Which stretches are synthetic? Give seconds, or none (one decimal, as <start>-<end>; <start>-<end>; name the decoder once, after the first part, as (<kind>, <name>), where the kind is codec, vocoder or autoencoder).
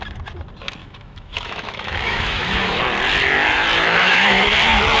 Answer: 0.8-2.8 (autoencoder, DAC-VAE); 4.0-4.5